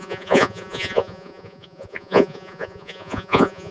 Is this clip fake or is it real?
fake